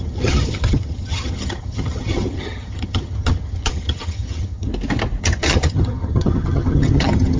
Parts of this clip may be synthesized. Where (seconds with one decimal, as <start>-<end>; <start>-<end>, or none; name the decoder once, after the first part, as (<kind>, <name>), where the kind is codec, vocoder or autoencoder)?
0.0-4.7 (vocoder, HiFi-GAN); 5.2-7.4